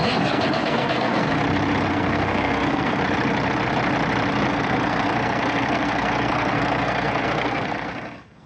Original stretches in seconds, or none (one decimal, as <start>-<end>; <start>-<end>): 1.4-1.9; 3.0-4.5

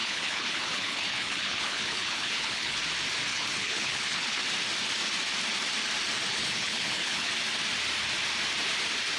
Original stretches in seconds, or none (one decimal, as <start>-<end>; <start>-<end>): 2.8-3.3; 4.4-6.3; 7.3-9.2

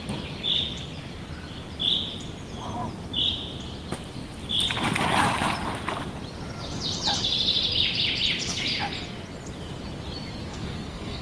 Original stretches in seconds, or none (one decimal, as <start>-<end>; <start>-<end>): 0.0-10.5

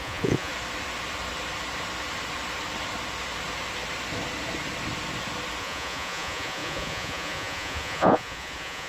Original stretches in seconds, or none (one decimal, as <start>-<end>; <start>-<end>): 0.5-5.6

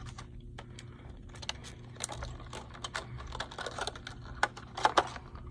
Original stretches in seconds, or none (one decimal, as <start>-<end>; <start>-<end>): 0.0-5.5

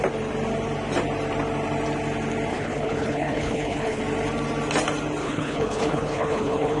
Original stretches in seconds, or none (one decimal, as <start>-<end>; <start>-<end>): 0.0-2.5; 4.0-5.2

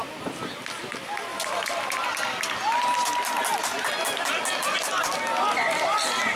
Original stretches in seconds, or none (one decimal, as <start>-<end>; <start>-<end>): 0.0-6.4

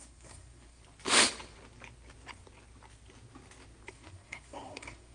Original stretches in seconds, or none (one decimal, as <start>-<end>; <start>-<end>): 0.8-3.9